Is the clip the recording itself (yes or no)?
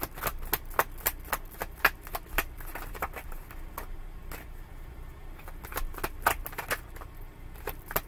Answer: yes